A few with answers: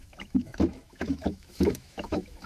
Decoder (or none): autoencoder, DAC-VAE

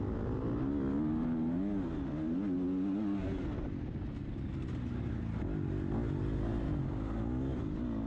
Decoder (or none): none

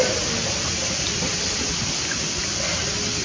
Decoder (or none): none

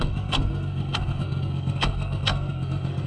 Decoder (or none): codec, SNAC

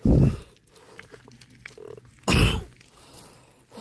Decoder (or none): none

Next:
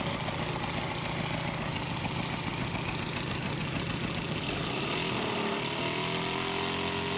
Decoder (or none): none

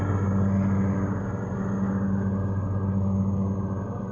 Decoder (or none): none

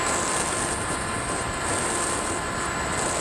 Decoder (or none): none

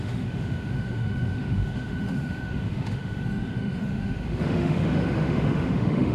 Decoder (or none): autoencoder, DAC-VAE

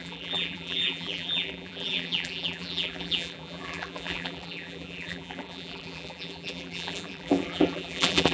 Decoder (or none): vocoder, BigVGAN v2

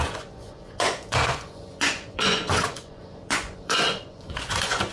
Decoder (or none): vocoder, Vocos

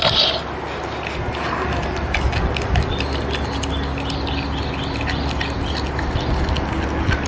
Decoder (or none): none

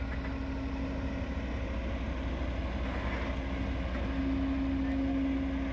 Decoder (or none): none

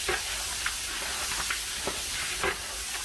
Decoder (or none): none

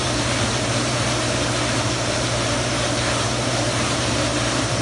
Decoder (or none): vocoder, BigVGAN v2